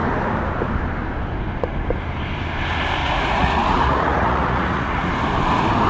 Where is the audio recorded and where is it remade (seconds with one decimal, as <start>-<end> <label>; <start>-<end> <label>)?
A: 0.0-3.0 recorded; 3.0-5.1 remade; 5.1-5.9 recorded